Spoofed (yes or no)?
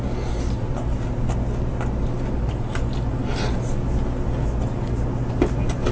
no